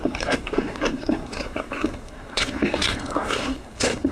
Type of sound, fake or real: fake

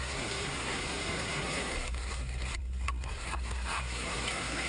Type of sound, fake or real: fake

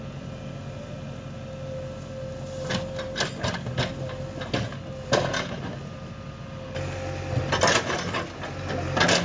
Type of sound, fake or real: real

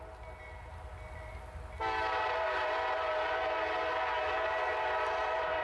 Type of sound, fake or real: real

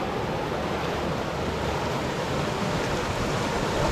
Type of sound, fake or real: real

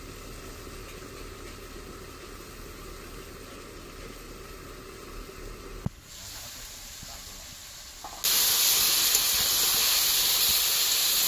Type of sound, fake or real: real